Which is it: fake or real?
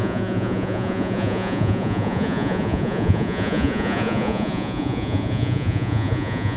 fake